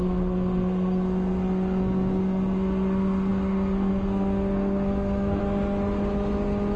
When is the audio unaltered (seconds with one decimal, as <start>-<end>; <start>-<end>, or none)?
5.4-6.8